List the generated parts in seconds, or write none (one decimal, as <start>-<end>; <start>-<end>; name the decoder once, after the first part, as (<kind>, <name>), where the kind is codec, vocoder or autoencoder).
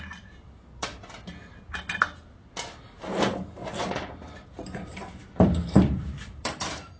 0.0-0.9 (vocoder, BigVGAN v2); 3.1-3.6; 4.1-7.0